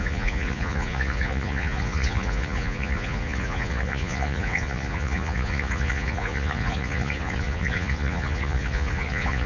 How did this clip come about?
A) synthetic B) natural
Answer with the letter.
A